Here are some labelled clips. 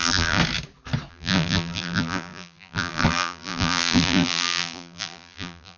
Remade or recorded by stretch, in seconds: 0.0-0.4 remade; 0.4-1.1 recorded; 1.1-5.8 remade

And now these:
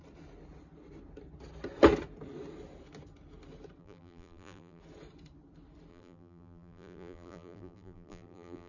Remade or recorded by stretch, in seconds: 0.0-3.8 recorded; 3.8-4.8 remade; 4.8-5.9 recorded; 5.9-8.7 remade